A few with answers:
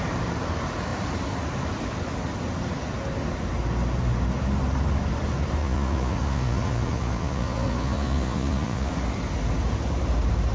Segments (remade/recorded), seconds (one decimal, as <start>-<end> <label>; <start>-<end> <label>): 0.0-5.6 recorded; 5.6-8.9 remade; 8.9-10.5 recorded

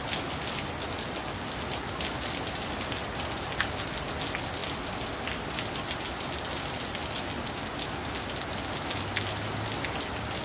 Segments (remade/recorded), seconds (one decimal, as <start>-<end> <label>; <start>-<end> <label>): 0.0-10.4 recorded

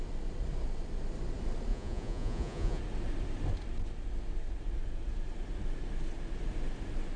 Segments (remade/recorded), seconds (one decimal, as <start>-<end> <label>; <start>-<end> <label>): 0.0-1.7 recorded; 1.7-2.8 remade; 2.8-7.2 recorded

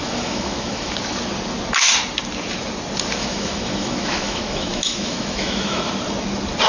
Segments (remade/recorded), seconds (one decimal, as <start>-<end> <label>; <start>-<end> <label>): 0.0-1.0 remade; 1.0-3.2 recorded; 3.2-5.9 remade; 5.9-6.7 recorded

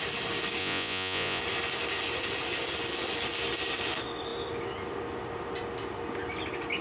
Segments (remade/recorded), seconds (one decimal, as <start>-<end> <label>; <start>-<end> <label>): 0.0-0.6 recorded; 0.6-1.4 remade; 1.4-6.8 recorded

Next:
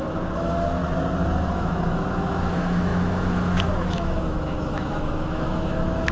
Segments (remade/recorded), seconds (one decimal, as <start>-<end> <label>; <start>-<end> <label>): 0.0-0.8 remade; 0.8-1.5 recorded; 1.5-6.1 remade